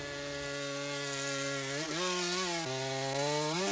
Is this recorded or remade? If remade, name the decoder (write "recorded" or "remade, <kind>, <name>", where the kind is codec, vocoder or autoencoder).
recorded